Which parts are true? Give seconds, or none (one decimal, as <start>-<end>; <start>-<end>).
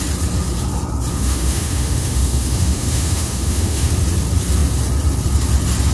0.0-1.1; 3.9-5.9